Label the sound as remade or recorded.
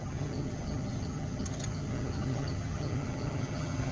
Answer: remade